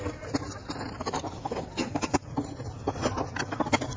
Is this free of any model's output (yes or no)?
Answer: yes